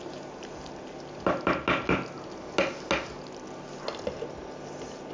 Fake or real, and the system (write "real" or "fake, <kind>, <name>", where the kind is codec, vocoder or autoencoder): real